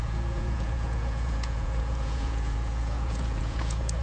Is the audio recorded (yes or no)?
no